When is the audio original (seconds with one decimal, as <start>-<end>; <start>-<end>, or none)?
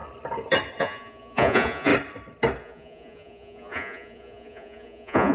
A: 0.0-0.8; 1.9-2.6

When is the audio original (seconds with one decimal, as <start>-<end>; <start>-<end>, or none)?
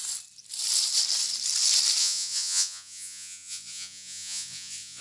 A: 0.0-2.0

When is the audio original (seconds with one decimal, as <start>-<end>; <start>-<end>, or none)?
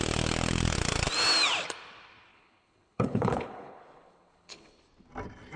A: 0.0-2.3; 4.8-5.6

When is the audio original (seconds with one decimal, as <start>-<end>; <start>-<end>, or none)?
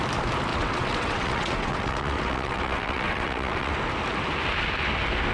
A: 0.0-0.5; 3.7-5.3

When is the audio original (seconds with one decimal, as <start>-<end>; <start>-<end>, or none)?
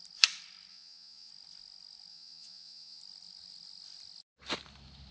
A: 0.0-0.7; 1.3-2.1; 3.0-5.1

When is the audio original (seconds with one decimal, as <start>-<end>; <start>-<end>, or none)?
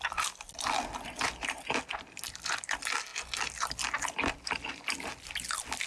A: 0.0-5.9